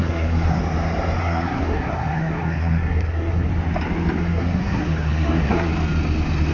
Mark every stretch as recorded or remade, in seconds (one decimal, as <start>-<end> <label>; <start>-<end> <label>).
0.0-0.6 remade; 0.6-1.2 recorded; 1.2-3.5 remade; 3.5-4.2 recorded; 4.2-5.7 remade; 5.7-6.5 recorded